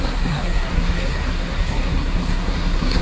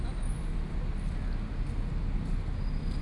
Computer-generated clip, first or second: first